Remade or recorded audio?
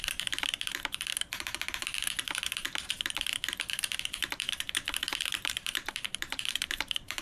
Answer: remade